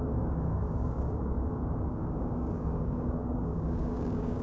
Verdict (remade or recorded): remade